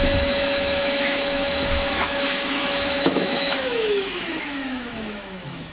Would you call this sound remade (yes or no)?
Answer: yes